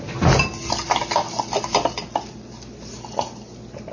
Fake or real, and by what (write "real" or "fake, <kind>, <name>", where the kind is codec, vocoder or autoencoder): real